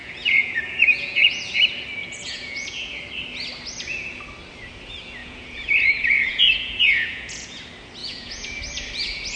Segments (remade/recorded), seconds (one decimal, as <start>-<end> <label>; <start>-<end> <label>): 0.0-1.4 remade; 1.4-2.0 recorded; 2.0-3.0 remade; 3.0-5.2 recorded; 5.2-7.6 remade; 7.6-8.0 recorded; 8.0-8.6 remade; 8.6-9.4 recorded